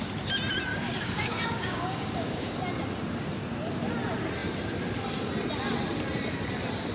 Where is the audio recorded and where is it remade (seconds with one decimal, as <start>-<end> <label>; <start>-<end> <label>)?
0.0-0.7 recorded; 0.7-2.6 remade; 2.6-6.9 recorded